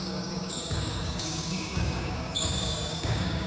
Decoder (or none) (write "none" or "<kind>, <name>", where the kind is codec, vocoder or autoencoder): codec, DAC